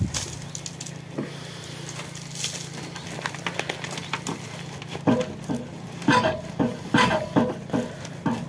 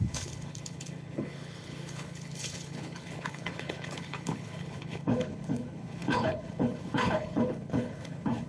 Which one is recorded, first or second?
first